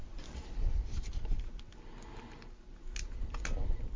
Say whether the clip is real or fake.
real